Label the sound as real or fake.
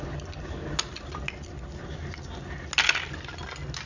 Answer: real